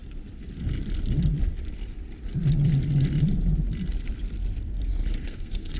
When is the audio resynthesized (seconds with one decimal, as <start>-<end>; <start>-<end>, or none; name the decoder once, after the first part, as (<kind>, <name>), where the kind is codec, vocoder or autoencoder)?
5.2-5.8 (codec, SNAC)